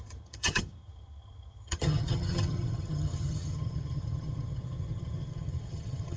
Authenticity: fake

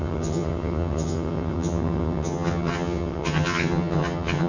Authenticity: fake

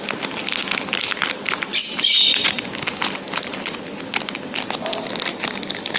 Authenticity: real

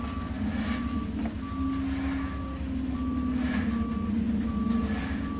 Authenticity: real